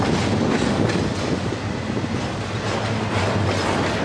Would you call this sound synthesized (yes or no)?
no